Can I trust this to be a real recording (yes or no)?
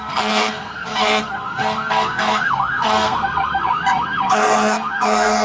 no